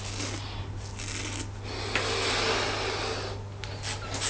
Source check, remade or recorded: recorded